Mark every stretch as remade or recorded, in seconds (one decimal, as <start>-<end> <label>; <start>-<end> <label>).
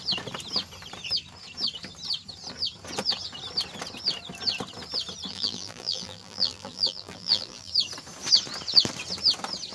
0.0-5.3 recorded; 5.3-7.7 remade; 7.7-9.7 recorded